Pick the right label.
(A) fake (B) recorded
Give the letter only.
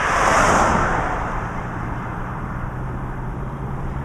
A